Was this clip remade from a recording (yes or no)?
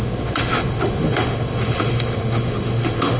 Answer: yes